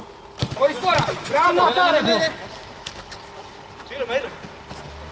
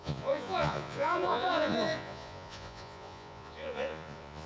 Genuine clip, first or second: first